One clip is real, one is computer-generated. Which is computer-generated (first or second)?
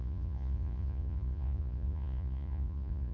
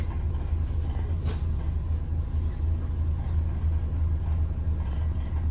first